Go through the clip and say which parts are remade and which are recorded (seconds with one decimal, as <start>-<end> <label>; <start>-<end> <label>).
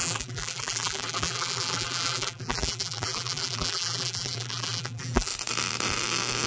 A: 0.0-5.3 remade; 5.3-6.5 recorded